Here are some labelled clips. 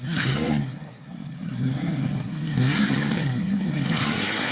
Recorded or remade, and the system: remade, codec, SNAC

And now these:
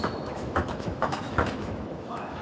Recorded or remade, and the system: remade, autoencoder, DAC-VAE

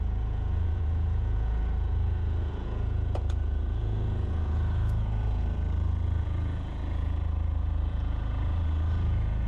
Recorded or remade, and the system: remade, vocoder, Vocos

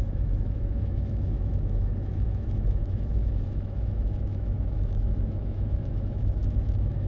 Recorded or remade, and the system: remade, autoencoder, DAC-VAE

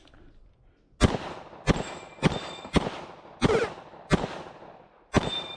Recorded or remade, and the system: recorded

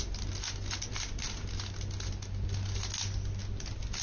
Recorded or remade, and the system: recorded